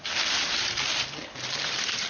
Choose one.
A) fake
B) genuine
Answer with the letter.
A